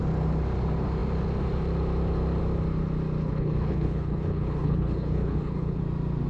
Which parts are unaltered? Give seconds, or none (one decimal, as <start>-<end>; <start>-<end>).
0.0-3.2; 5.8-6.3